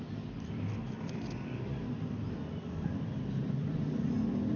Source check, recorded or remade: recorded